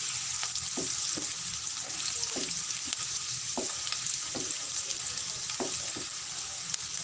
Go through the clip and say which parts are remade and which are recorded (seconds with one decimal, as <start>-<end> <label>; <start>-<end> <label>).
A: 0.0-1.5 recorded; 1.5-4.8 remade; 4.8-7.0 recorded